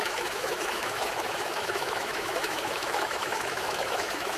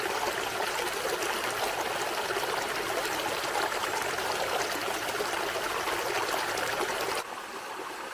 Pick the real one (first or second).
second